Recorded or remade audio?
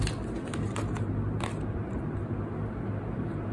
recorded